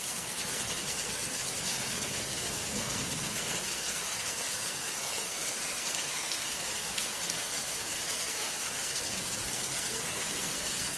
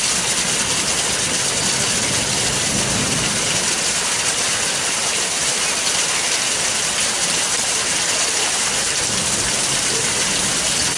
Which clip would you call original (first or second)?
second